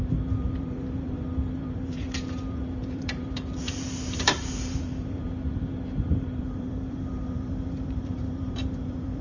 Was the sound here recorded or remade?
remade